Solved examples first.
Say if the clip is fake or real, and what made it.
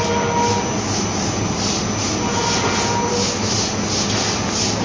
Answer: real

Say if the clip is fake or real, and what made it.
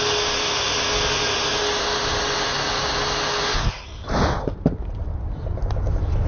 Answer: real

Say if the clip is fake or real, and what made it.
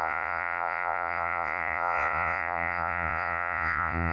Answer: fake, vocoder, Vocos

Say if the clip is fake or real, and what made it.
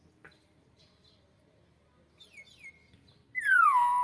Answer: real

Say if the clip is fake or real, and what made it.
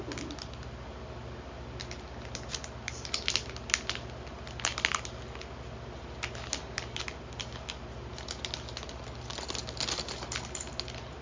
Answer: real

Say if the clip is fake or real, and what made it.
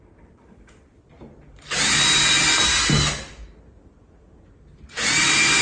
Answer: real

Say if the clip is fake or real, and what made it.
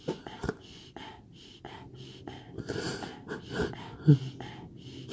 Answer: real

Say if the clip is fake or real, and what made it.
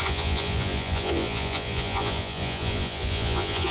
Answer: fake, vocoder, Vocos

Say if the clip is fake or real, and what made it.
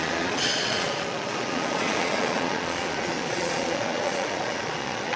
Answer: fake, vocoder, Vocos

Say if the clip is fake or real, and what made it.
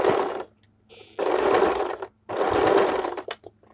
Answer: real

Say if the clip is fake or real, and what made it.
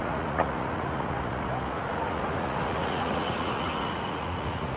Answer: fake, vocoder, Vocos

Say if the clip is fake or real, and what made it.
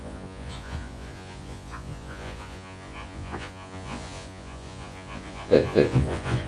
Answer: fake, vocoder, Vocos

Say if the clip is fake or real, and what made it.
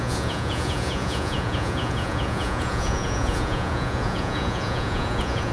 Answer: fake, vocoder, Vocos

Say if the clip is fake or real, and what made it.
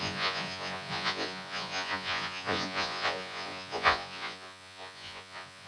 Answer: fake, vocoder, Vocos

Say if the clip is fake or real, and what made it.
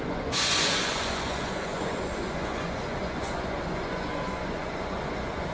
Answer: fake, vocoder, Vocos